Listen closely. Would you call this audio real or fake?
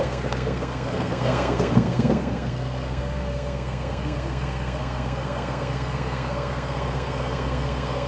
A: fake